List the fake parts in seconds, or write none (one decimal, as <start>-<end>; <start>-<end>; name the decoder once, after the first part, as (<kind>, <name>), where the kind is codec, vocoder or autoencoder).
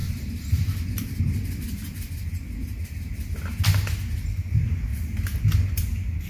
0.0-1.2 (vocoder, BigVGAN v2); 2.6-3.2